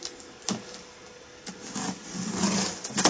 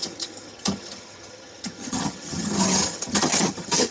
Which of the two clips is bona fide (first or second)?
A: first